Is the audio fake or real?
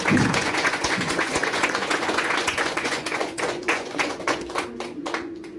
fake